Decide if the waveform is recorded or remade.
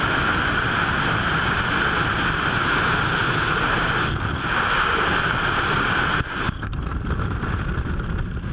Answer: recorded